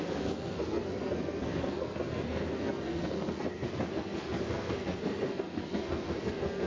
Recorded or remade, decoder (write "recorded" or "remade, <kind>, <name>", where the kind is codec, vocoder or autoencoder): remade, codec, SNAC